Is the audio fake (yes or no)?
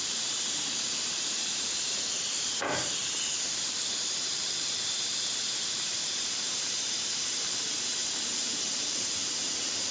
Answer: yes